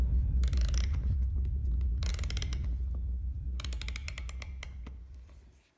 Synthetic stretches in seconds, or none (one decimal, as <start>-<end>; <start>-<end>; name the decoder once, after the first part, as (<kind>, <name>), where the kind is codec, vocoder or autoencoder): none